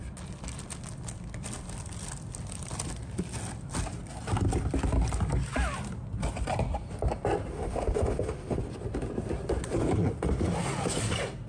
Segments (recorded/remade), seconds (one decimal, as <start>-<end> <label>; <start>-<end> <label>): 0.0-7.5 recorded; 7.5-8.6 remade; 8.6-11.5 recorded